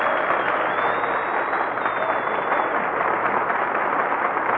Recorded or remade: recorded